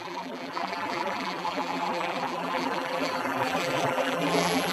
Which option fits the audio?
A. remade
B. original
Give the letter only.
A